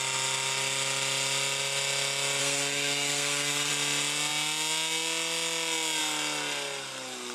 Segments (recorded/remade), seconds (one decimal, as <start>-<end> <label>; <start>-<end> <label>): 0.0-2.4 recorded; 2.4-3.7 remade; 3.7-7.3 recorded